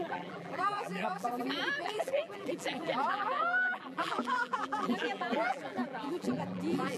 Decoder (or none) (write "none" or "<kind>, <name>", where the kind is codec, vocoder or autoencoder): vocoder, BigVGAN v2